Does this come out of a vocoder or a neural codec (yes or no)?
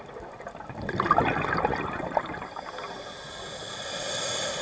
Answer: no